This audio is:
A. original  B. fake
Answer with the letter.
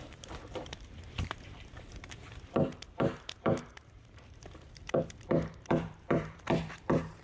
B